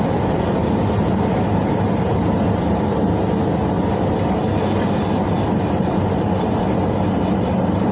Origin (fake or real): real